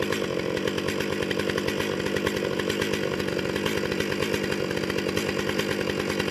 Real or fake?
real